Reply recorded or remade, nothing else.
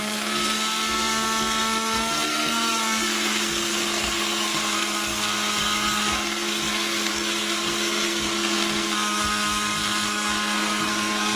remade